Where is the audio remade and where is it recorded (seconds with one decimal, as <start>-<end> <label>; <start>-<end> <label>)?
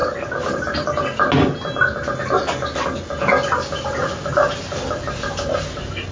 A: 0.0-6.1 recorded